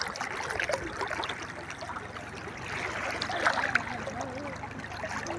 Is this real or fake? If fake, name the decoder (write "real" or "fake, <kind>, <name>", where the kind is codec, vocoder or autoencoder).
real